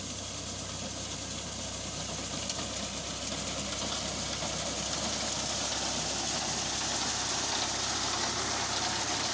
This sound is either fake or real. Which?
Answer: real